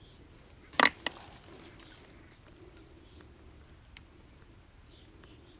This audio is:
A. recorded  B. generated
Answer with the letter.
A